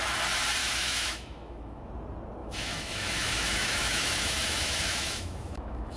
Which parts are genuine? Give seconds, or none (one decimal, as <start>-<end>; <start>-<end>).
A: 0.0-0.6; 1.9-2.4